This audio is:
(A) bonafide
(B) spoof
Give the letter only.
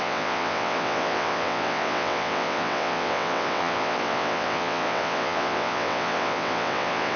B